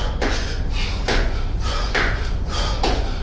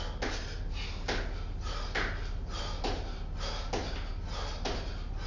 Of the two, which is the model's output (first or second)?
first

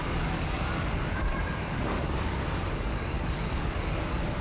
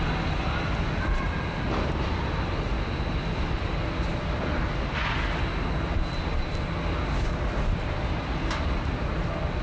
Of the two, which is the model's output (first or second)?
first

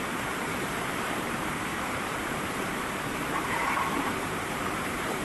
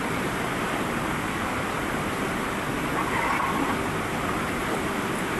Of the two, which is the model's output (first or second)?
first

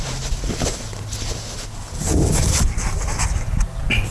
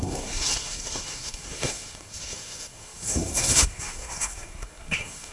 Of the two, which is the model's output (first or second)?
second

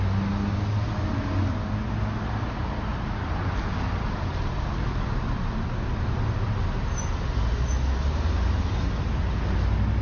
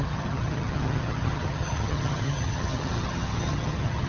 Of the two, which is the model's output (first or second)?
second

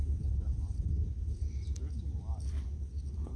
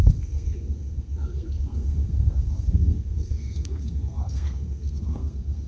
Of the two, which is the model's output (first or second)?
second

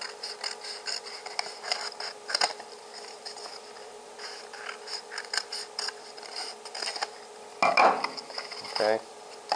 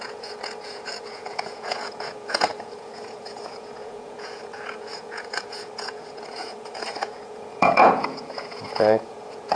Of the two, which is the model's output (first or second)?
second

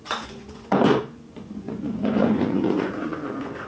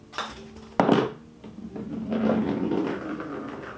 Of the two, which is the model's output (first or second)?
first